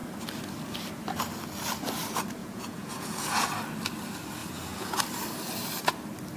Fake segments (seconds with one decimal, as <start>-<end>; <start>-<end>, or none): 2.4-3.5; 4.4-5.0

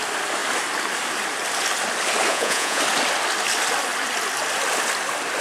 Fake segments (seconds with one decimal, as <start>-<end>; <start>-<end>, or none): 2.3-2.8